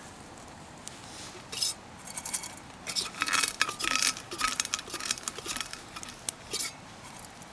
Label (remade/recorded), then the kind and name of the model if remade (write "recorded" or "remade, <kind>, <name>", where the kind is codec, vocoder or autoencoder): recorded